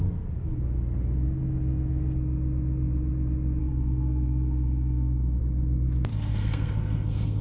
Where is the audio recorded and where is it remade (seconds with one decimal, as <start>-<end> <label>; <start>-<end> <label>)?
0.0-3.6 recorded; 3.6-5.4 remade; 5.4-6.1 recorded; 6.1-7.4 remade